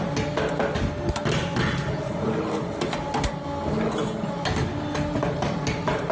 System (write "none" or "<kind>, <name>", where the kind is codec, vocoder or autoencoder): none